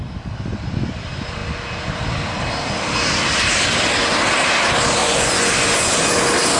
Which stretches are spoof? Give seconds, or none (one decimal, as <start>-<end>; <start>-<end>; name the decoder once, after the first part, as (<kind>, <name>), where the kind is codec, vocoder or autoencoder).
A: 5.0-5.9 (vocoder, Vocos)